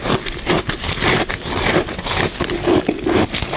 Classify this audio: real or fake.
real